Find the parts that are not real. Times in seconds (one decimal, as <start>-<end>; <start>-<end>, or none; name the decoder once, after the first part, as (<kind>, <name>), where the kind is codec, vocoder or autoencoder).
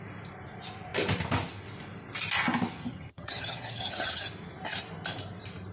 2.8-4.2 (vocoder, HiFi-GAN)